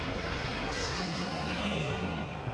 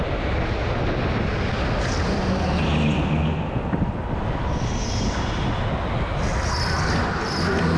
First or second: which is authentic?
second